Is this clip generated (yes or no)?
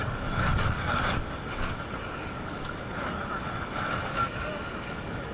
yes